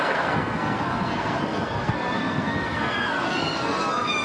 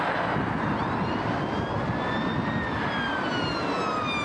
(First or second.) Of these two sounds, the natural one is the second